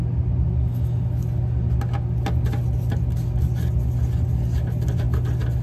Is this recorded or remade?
recorded